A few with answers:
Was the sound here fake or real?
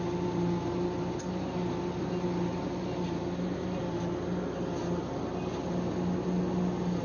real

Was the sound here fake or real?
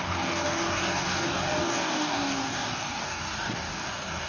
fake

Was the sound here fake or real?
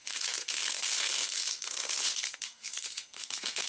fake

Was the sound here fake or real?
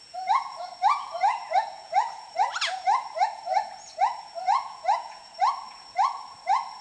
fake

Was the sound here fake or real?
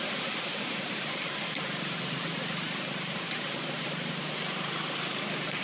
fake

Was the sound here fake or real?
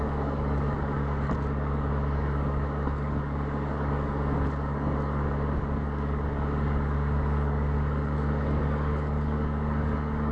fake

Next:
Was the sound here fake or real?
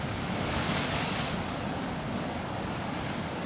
fake